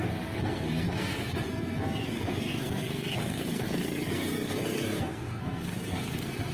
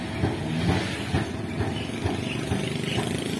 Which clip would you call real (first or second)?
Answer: second